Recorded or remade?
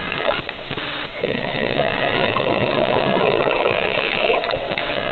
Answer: remade